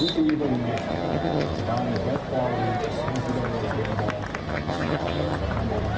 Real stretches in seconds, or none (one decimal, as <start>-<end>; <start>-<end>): 0.0-0.9; 1.6-4.4; 5.4-6.0